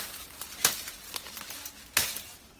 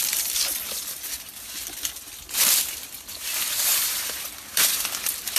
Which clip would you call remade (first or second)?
second